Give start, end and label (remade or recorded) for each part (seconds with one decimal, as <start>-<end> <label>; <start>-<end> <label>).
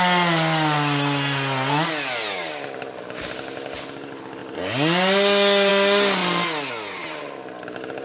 0.0-8.0 recorded